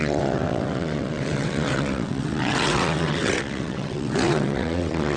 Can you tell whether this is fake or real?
fake